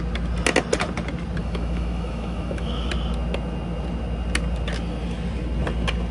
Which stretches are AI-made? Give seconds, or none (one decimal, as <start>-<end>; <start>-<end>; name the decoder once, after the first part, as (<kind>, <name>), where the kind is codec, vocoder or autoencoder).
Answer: 1.4-2.9 (autoencoder, DAC-VAE)

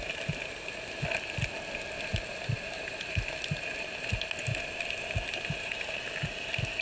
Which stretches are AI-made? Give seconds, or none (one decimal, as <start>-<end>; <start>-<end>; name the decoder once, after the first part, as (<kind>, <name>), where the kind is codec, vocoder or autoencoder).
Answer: none

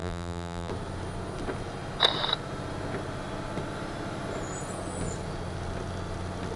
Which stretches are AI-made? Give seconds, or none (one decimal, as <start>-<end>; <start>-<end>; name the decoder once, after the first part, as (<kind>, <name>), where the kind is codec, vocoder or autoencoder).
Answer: 0.0-0.7 (vocoder, BigVGAN v2)

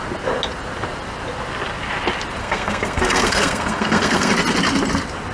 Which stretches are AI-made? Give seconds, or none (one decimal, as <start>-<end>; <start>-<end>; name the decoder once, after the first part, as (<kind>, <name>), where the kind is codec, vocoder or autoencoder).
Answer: 2.4-4.3 (codec, SNAC)

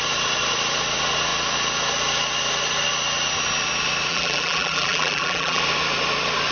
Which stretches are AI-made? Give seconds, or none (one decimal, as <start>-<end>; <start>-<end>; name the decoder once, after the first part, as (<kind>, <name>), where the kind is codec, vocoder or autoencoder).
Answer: 4.1-5.6 (vocoder, BigVGAN v2)

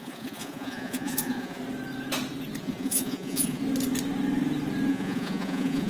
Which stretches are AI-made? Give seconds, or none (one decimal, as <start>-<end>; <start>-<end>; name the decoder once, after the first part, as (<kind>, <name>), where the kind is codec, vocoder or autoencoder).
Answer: 0.0-1.6 (vocoder, Vocos); 2.6-3.6; 4.9-5.9